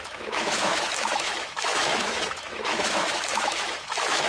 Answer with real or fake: fake